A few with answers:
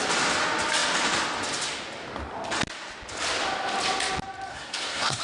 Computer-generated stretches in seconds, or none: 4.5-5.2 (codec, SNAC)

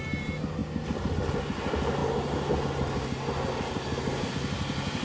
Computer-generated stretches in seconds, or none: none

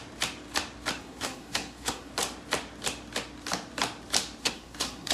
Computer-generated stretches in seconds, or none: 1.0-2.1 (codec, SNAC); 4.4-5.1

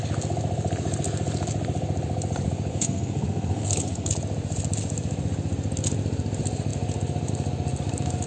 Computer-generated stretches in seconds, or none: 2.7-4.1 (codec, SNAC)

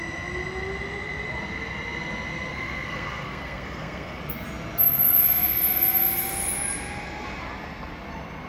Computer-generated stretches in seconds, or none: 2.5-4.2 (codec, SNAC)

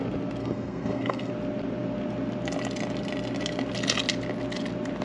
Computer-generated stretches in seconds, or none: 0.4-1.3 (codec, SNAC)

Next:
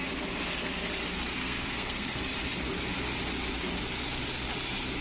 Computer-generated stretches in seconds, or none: 1.4-2.2 (codec, SNAC)